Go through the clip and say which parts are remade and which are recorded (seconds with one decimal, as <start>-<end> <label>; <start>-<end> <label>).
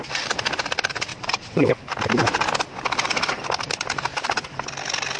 0.0-1.1 recorded; 1.1-1.7 remade; 1.7-5.2 recorded